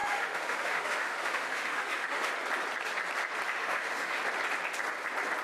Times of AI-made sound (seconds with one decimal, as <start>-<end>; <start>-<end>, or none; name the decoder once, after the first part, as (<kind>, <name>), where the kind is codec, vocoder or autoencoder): 0.0-2.3 (autoencoder, DAC-VAE); 3.6-4.2